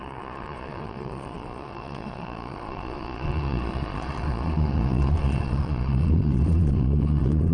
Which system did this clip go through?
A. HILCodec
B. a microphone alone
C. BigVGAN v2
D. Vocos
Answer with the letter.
D